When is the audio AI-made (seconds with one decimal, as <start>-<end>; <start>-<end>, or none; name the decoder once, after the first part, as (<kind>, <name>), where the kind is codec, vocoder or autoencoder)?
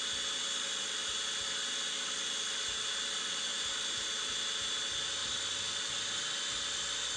none